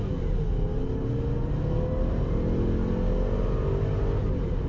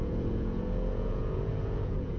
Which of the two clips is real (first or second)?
first